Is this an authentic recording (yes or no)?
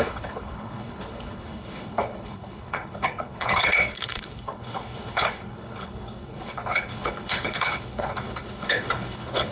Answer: no